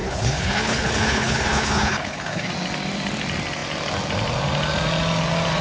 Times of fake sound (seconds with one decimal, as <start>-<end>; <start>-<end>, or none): 0.0-2.5